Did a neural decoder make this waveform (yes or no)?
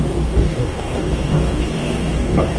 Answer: yes